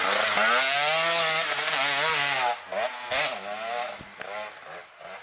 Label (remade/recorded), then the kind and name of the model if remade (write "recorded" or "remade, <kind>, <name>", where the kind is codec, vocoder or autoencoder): recorded